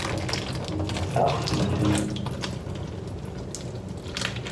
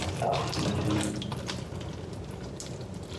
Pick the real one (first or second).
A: first